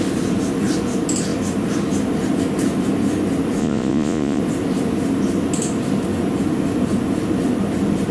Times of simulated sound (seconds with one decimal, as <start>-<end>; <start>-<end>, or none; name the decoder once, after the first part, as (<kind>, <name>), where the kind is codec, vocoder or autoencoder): 3.6-4.4 (vocoder, Vocos)

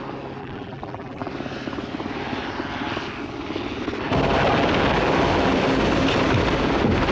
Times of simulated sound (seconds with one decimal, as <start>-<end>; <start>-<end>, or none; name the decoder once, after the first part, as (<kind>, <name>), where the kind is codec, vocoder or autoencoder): 0.4-1.3 (vocoder, BigVGAN v2)

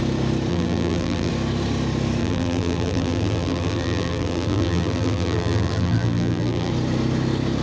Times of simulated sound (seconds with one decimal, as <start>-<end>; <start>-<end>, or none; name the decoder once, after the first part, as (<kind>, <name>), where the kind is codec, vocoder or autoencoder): 0.5-1.3 (vocoder, BigVGAN v2); 2.2-6.7

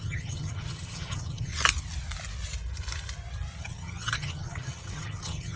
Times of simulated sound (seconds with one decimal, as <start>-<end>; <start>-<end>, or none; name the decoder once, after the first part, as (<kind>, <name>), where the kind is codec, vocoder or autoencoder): 0.0-1.5 (vocoder, HiFi-GAN); 3.6-5.6

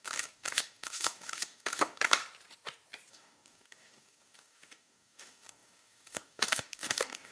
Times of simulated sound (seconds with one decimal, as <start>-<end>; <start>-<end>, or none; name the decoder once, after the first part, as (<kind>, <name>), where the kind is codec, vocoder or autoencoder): 0.0-2.2 (codec, DAC); 3.1-7.3

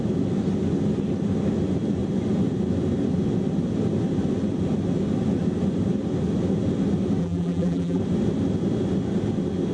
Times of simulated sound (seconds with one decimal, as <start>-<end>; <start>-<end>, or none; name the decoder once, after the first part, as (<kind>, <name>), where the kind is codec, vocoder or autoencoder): 7.2-8.0 (vocoder, BigVGAN v2)

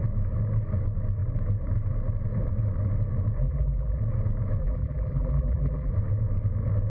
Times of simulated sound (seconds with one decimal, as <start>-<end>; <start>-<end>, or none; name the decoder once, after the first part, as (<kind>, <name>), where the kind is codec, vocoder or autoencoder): 3.4-4.0 (vocoder, BigVGAN v2); 4.6-5.9